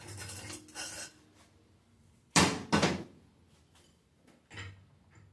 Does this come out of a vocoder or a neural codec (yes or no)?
no